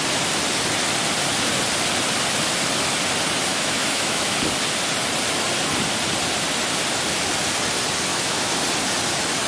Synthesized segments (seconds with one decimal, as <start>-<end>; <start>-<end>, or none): 3.5-4.4; 8.1-8.6